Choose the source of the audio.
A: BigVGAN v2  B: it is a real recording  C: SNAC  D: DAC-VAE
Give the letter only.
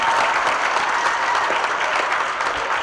B